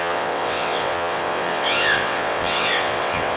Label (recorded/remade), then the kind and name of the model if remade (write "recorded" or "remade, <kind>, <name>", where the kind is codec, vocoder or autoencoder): remade, vocoder, WaveNeXt